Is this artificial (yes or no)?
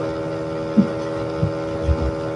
no